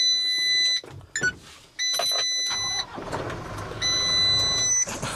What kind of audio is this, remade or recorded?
recorded